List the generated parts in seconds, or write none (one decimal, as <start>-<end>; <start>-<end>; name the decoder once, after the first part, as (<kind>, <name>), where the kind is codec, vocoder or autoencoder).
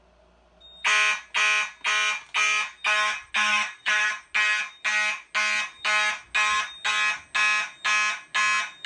3.5-4.1 (vocoder, BigVGAN v2)